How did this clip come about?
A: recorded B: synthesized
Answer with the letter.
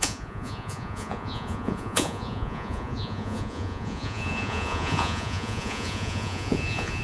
B